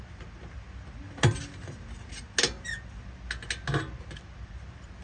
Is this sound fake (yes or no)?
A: no